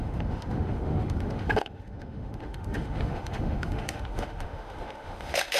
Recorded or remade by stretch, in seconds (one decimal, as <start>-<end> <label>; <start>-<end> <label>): 0.0-5.6 remade